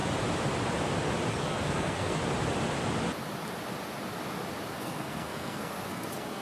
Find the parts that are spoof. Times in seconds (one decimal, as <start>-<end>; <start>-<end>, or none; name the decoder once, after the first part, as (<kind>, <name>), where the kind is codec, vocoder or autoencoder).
1.3-2.2 (codec, SNAC); 4.7-6.4